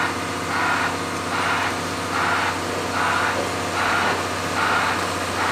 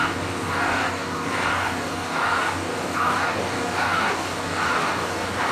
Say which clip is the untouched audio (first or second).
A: first